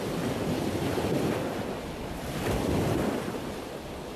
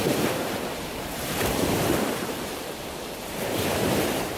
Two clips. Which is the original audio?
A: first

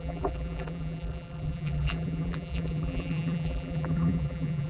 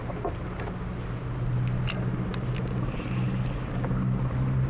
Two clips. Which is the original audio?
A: second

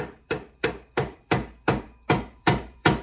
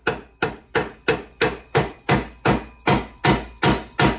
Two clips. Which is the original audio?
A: second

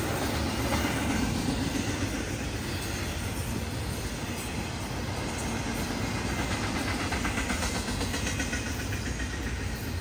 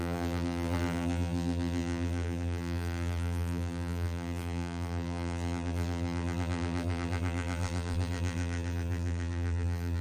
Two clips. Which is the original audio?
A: first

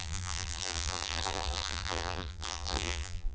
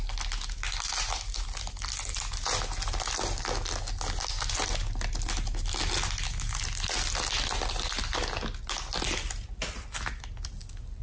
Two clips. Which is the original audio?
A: second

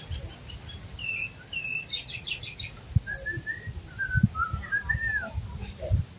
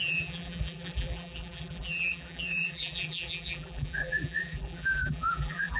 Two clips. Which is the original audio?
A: first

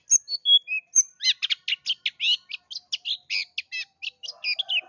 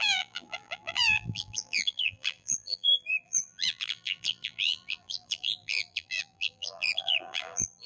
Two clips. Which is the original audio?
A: first